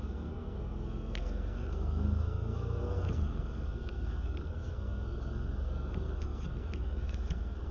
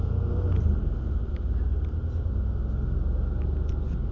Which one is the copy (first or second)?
first